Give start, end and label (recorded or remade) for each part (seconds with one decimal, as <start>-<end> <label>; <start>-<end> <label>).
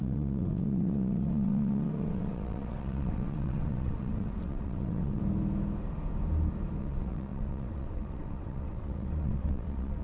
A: 0.0-5.2 remade; 5.2-6.8 recorded; 6.8-10.0 remade